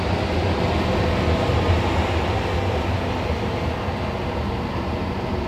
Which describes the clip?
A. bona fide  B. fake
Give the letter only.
A